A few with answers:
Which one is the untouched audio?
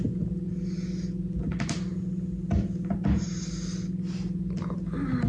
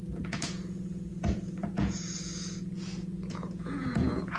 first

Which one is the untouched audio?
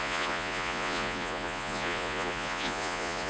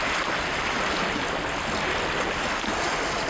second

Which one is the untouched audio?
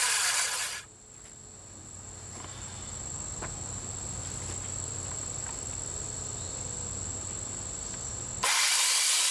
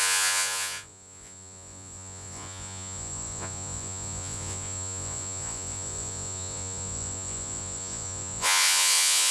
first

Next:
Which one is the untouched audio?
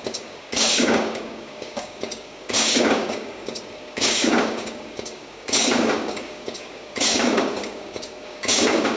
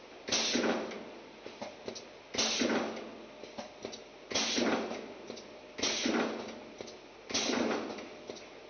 second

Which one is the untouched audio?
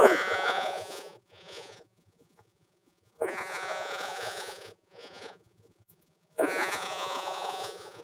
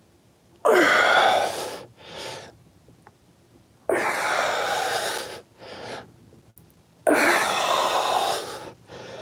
second